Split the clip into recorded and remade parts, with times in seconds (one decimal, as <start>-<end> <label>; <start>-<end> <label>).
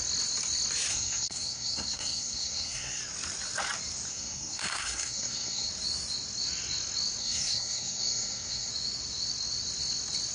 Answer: 0.0-0.9 recorded; 0.9-3.0 remade; 3.0-4.1 recorded; 4.1-5.7 remade; 5.7-7.2 recorded; 7.2-8.7 remade; 8.7-10.3 recorded